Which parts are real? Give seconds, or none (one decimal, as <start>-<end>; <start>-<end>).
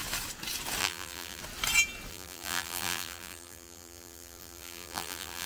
0.0-0.8; 1.4-2.1